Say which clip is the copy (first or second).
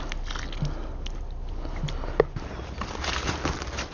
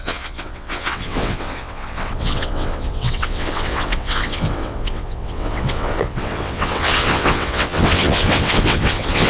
second